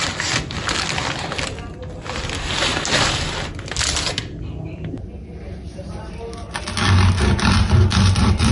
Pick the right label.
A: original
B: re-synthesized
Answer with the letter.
A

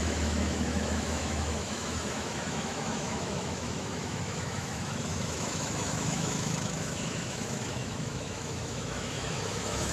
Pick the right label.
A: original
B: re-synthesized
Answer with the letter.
B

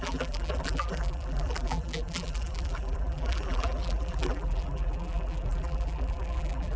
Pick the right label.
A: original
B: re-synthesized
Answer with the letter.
B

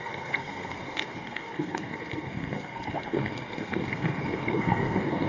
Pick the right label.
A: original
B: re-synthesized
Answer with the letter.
B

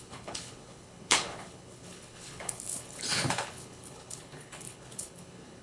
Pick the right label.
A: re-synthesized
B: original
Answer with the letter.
A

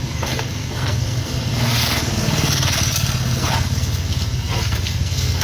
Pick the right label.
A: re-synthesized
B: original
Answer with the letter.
A